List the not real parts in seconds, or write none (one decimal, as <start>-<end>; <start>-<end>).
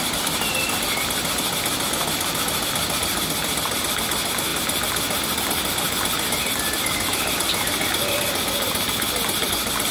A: none